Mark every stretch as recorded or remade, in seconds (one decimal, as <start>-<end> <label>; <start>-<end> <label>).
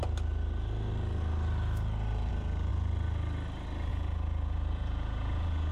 0.0-2.3 recorded; 2.3-2.7 remade; 2.7-3.9 recorded; 3.9-5.7 remade